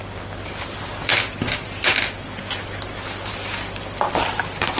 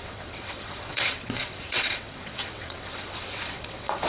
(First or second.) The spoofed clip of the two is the second